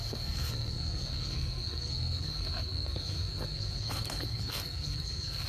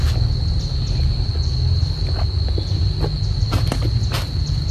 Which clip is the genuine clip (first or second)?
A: second